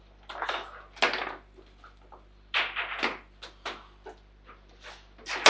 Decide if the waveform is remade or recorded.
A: recorded